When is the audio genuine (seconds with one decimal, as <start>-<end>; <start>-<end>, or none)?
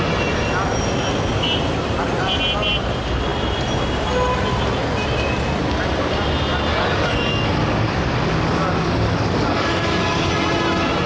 0.0-6.7; 10.3-11.1